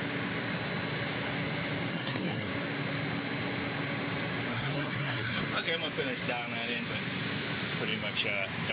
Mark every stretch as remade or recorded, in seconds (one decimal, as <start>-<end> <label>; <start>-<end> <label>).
0.0-1.9 recorded; 1.9-2.5 remade; 2.5-4.5 recorded; 4.5-5.4 remade; 5.4-8.7 recorded